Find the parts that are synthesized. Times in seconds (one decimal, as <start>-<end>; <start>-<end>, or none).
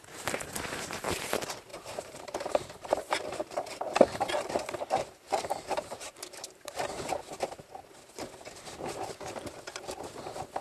1.7-6.8